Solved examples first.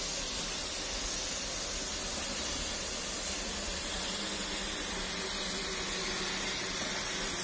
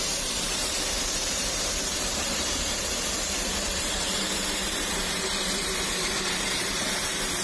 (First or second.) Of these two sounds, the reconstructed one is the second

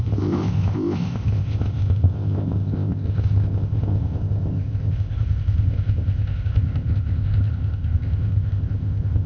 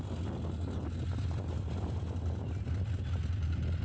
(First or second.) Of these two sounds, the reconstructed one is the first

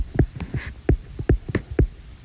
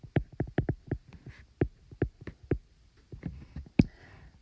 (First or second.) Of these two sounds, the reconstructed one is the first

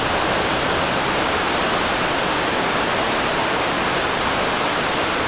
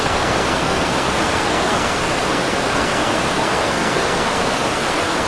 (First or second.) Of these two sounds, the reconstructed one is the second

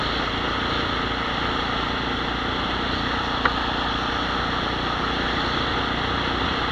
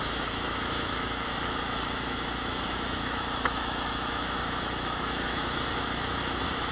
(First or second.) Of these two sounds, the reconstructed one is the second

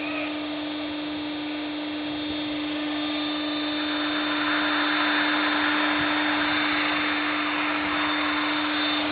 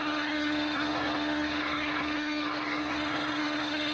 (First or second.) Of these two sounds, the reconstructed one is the second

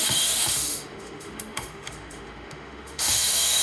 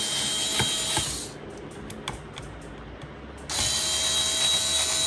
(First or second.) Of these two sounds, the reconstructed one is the first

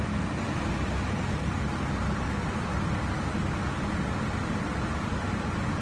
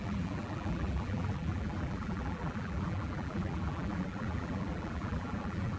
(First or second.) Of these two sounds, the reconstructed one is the second